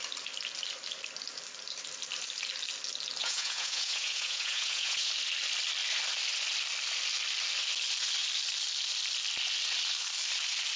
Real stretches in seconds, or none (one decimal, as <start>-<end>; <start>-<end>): 0.0-3.2; 5.1-10.8